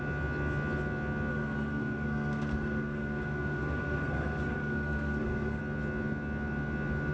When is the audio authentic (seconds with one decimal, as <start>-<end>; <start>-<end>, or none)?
0.0-1.3; 5.6-7.1